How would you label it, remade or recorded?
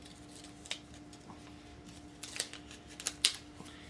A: recorded